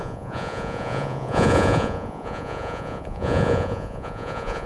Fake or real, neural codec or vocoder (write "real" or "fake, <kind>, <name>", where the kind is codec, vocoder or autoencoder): fake, vocoder, Vocos